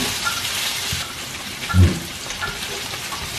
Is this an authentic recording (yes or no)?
no